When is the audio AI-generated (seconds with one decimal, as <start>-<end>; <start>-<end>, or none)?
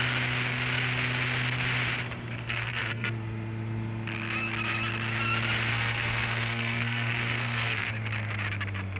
2.5-3.1; 5.7-7.9